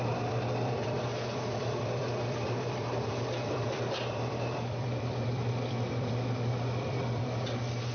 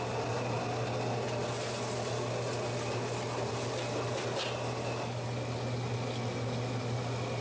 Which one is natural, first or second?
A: second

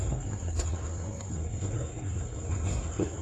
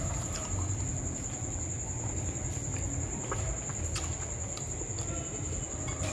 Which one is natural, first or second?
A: second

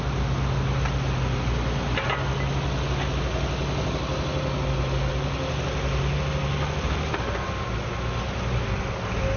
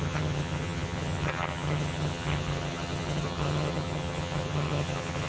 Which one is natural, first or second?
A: first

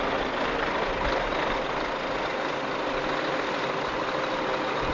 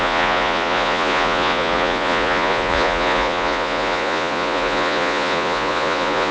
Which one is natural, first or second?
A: first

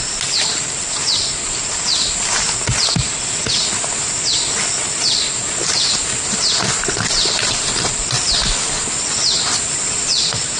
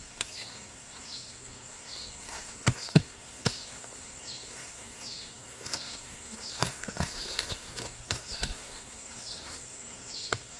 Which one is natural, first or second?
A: first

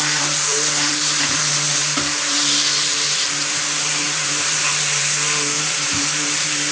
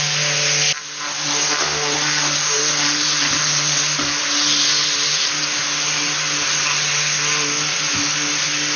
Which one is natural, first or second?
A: second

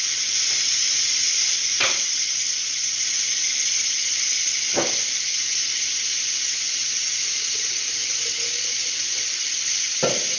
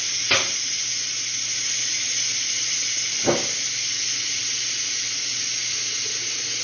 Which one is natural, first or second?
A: second